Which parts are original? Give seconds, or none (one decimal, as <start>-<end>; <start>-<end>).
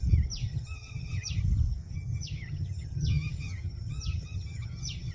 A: 0.0-0.4; 1.4-1.8